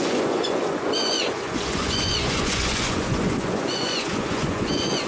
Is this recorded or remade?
remade